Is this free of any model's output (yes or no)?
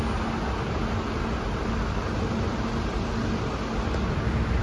yes